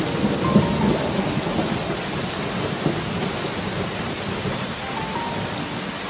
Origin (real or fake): real